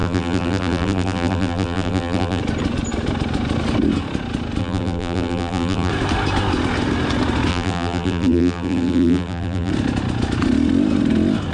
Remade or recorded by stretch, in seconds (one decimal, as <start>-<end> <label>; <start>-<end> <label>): 0.0-2.4 remade; 2.4-4.6 recorded; 4.6-5.9 remade; 5.9-7.5 recorded; 7.5-9.7 remade; 9.7-11.5 recorded